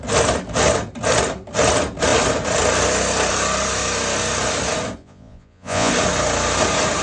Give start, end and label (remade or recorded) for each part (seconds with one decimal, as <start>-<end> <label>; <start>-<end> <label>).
0.0-5.0 recorded; 5.0-5.9 remade; 5.9-7.0 recorded

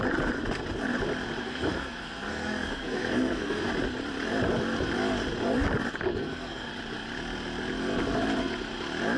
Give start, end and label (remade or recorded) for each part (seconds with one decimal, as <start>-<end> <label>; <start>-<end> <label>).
0.0-1.4 recorded; 1.4-3.7 remade; 3.7-6.1 recorded; 6.1-6.7 remade; 6.7-9.2 recorded

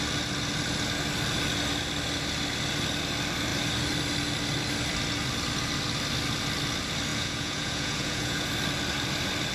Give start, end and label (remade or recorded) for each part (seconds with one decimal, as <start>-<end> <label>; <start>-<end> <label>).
0.0-7.1 recorded; 7.1-8.5 remade; 8.5-9.5 recorded

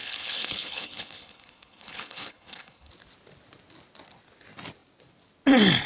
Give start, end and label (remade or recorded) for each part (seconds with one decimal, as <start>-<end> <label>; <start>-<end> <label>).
0.0-2.9 remade; 2.9-5.9 recorded